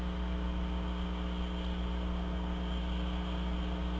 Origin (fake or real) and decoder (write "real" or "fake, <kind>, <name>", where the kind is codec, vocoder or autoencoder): real